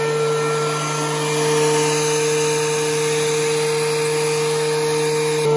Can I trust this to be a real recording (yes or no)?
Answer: yes